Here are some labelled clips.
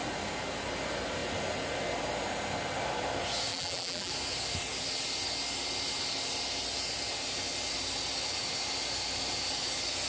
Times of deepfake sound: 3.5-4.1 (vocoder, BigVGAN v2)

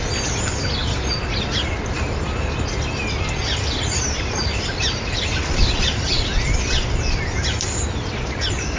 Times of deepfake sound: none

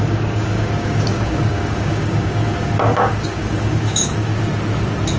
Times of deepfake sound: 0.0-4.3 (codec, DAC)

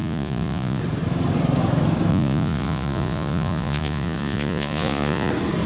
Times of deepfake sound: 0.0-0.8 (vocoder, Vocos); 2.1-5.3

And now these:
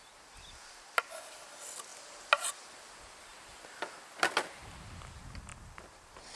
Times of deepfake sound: none

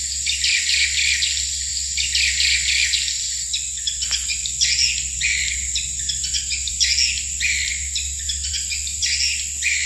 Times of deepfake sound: none

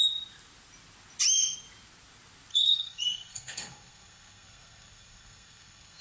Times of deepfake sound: 2.5-6.0 (codec, SNAC)

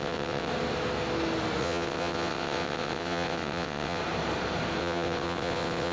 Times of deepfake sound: 0.0-0.5 (vocoder, WaveNeXt); 1.6-4.0; 4.8-5.9